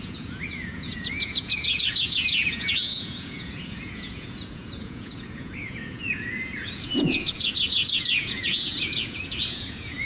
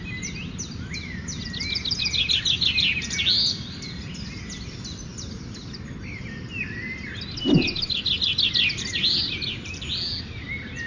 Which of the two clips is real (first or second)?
second